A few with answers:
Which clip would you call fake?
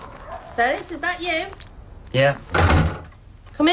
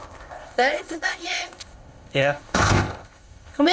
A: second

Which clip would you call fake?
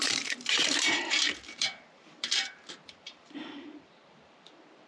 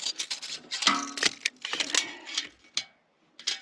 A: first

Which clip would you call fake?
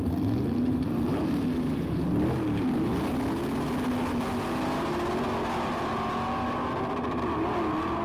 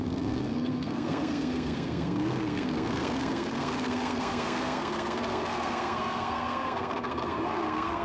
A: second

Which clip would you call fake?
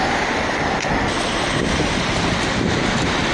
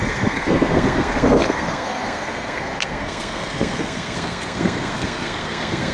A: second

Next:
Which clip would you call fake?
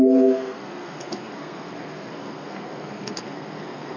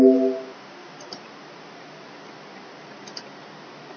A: first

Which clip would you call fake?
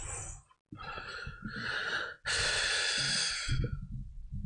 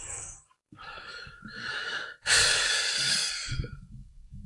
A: second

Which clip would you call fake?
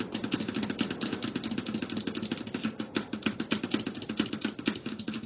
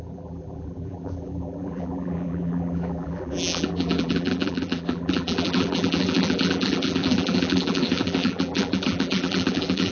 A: second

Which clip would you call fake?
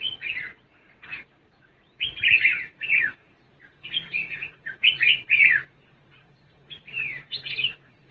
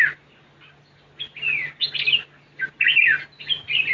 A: first